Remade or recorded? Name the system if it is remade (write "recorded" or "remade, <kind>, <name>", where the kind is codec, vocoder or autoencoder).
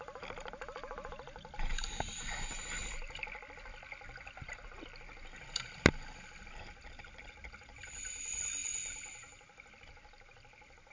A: recorded